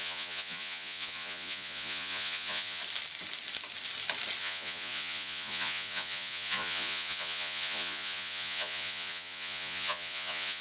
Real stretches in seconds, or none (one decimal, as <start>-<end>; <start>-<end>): 2.8-4.4

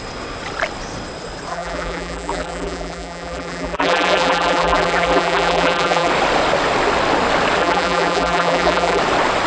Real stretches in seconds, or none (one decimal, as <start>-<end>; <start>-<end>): 0.0-1.5; 6.1-7.6; 9.0-9.5

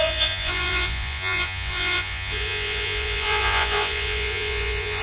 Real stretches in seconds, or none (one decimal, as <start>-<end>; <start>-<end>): none

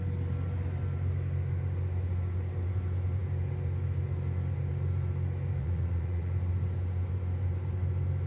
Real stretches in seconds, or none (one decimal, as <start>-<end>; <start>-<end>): 0.0-5.6; 6.3-8.3

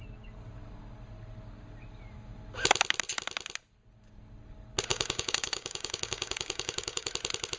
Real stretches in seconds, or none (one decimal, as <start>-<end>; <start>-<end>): 0.0-4.9; 7.1-7.6

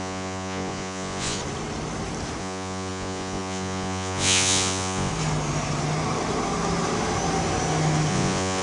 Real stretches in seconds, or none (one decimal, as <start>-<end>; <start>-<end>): 1.4-2.4; 5.1-8.1